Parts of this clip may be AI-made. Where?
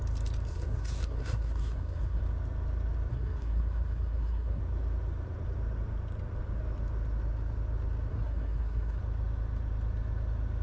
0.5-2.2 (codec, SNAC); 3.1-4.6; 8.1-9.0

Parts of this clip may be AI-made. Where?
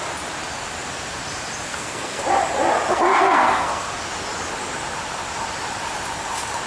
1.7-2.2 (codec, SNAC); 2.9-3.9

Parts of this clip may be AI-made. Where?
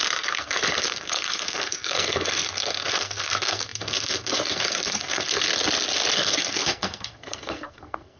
0.0-5.5 (codec, SNAC); 6.1-8.2